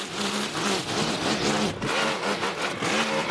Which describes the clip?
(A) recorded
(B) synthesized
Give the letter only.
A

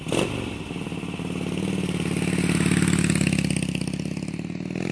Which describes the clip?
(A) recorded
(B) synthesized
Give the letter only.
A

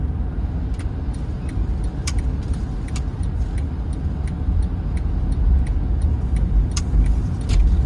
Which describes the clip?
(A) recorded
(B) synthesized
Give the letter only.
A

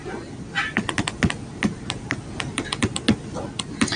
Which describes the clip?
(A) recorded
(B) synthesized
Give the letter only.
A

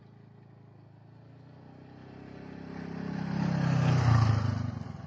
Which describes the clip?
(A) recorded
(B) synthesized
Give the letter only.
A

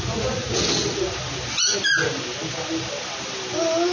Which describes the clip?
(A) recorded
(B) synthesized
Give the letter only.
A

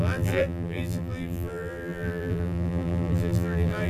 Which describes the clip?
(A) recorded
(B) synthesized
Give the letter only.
B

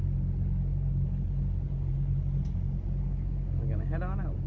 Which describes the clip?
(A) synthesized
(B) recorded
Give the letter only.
B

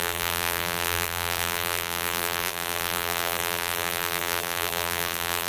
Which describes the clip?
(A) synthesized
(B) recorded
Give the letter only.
A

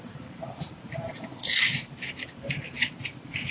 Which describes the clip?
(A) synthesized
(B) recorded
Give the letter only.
A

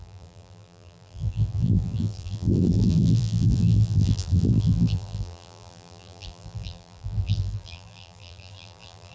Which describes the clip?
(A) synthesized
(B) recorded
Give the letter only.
A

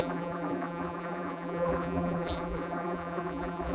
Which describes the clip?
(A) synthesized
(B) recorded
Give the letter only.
A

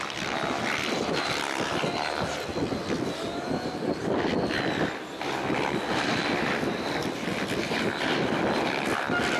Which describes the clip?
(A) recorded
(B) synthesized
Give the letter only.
A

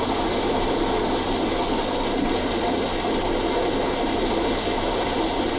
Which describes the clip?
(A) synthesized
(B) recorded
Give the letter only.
B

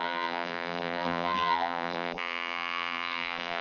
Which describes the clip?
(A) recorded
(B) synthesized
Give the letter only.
B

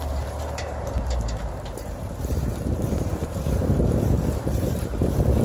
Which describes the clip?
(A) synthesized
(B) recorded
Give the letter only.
A